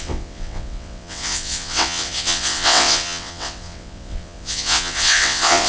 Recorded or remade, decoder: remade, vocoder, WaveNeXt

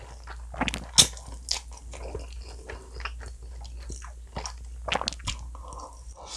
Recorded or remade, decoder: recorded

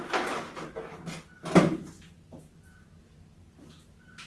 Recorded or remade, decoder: recorded